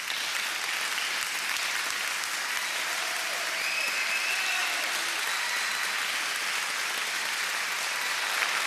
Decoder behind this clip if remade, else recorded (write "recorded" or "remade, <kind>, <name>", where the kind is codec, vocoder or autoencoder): recorded